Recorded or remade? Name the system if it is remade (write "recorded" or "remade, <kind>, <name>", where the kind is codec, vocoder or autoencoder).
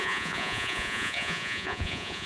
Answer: remade, vocoder, Vocos